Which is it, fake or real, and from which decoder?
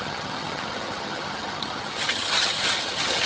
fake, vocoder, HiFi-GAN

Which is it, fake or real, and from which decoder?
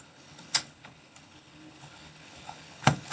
fake, codec, HILCodec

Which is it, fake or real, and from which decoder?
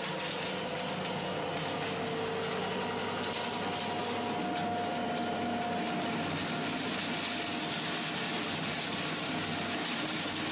real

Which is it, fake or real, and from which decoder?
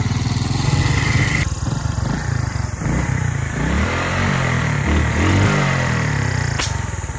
fake, vocoder, BigVGAN v2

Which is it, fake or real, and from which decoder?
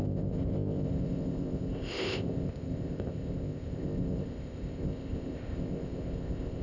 fake, codec, ZipCodec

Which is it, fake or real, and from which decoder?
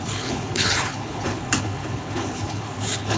fake, codec, HILCodec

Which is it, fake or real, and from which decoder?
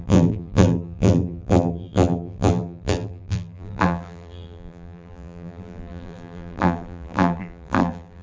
fake, vocoder, BigVGAN v2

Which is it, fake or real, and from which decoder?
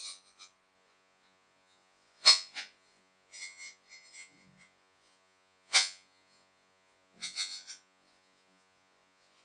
fake, vocoder, Vocos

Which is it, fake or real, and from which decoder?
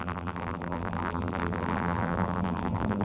fake, vocoder, BigVGAN v2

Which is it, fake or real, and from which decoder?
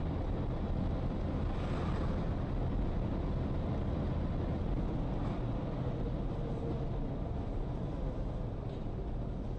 real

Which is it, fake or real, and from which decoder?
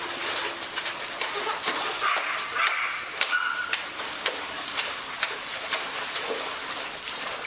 real